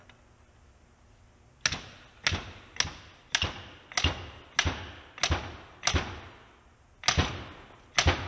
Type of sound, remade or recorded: recorded